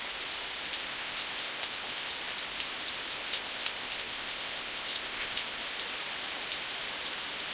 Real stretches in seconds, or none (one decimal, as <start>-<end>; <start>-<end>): 0.0-0.9; 2.1-3.2; 5.6-7.5